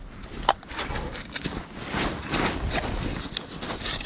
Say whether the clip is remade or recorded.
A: recorded